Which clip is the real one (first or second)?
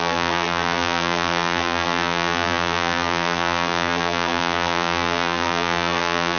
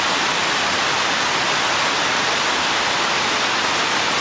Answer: second